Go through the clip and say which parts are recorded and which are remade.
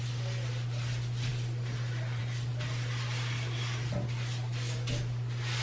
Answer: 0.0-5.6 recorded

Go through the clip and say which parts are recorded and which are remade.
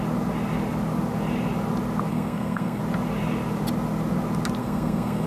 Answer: 0.0-2.1 recorded; 2.1-2.8 remade; 2.8-4.6 recorded; 4.6-5.3 remade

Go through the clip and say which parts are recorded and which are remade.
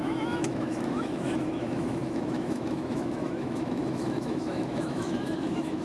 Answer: 0.0-5.8 remade